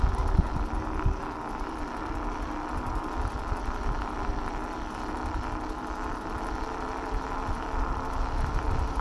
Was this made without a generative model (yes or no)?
yes